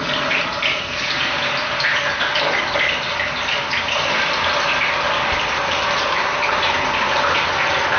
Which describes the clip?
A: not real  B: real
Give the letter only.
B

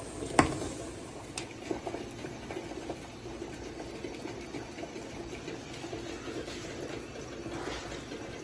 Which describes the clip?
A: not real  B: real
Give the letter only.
B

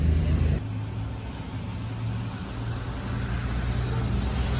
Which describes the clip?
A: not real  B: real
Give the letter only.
B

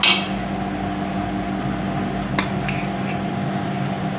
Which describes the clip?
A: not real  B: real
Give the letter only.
B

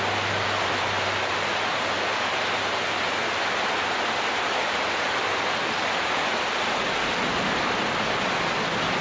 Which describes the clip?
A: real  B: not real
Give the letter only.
A